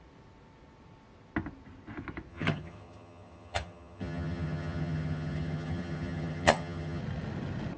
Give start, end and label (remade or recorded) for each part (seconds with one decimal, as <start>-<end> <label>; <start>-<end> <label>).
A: 0.0-2.3 recorded; 2.3-7.0 remade; 7.0-7.8 recorded